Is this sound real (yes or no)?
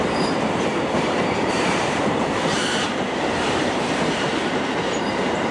no